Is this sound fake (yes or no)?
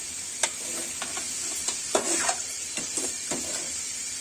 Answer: no